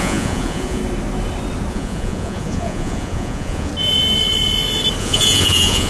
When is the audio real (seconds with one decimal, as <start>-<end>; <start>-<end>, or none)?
0.8-1.7; 3.7-5.0